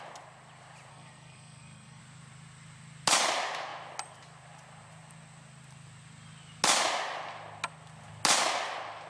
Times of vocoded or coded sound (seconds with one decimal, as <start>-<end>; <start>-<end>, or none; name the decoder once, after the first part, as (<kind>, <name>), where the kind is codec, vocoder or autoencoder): 0.9-2.0 (codec, SNAC)